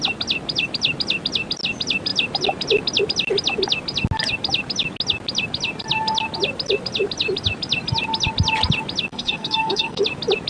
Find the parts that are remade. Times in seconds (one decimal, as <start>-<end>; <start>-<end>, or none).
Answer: 9.1-10.0